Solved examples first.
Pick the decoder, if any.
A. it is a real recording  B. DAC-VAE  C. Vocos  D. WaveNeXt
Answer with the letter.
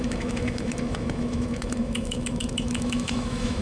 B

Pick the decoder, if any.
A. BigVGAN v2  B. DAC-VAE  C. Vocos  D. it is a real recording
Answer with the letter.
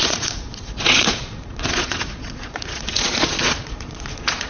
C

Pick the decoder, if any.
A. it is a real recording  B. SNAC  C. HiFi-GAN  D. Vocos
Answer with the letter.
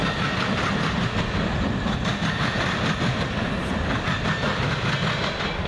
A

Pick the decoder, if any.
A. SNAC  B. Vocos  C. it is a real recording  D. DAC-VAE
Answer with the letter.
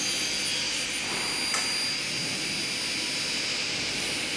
C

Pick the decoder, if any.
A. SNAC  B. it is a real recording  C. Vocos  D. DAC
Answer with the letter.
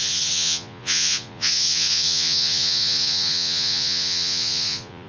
C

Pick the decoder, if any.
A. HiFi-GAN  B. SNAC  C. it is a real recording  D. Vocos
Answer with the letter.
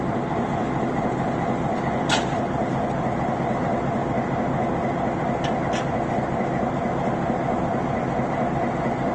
C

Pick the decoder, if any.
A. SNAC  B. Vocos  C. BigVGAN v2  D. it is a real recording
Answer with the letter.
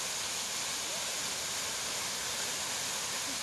D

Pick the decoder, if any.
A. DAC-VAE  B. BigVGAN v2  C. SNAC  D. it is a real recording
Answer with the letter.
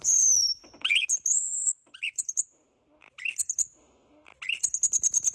D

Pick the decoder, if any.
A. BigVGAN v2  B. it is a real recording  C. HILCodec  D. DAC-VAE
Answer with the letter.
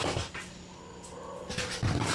B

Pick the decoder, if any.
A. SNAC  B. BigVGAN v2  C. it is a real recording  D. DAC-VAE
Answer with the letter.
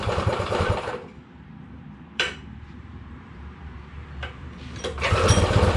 B